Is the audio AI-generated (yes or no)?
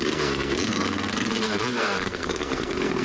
yes